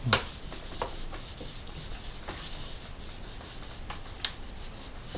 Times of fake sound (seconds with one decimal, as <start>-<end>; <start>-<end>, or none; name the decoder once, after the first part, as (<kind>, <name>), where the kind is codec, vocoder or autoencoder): none